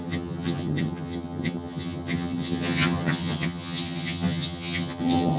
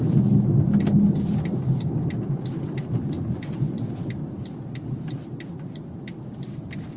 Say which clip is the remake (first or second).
first